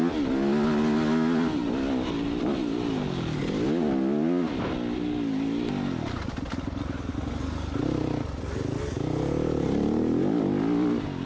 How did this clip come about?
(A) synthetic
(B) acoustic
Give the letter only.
B